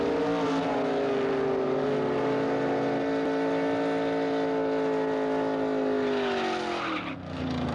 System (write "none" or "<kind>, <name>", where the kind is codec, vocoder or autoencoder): none